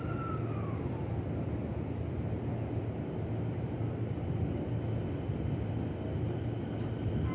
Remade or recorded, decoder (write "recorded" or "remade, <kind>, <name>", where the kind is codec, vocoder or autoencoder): recorded